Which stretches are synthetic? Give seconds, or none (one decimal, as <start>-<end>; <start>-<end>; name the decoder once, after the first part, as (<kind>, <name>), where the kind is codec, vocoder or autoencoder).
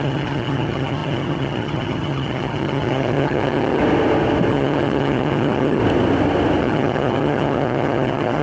0.0-3.8 (vocoder, HiFi-GAN); 4.5-5.8; 6.6-8.4